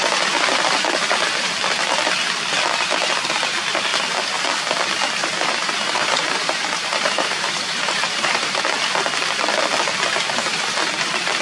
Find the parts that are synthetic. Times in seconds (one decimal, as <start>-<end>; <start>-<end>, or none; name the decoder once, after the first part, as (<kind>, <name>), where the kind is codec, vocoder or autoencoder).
5.2-8.6 (vocoder, BigVGAN v2)